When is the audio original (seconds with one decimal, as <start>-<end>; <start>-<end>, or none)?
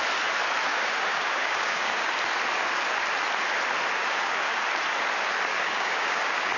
0.0-0.7; 2.1-4.0; 4.6-5.5